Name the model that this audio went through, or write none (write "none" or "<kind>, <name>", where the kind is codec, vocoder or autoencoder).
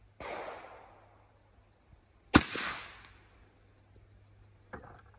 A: none